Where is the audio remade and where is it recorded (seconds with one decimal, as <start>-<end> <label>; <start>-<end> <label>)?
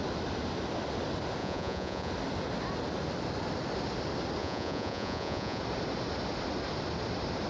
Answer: 0.0-1.4 recorded; 1.4-2.1 remade; 2.1-4.4 recorded; 4.4-5.6 remade; 5.6-7.5 recorded